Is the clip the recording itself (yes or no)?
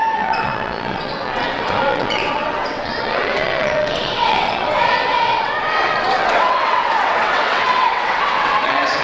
no